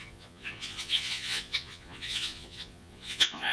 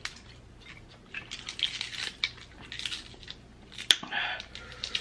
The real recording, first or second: second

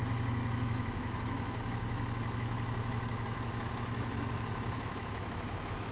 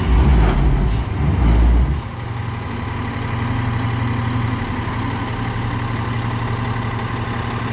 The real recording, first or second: second